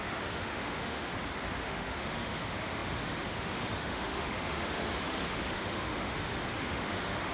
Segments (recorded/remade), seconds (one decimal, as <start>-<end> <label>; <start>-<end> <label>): 0.0-1.1 remade; 1.1-1.6 recorded; 1.6-7.3 remade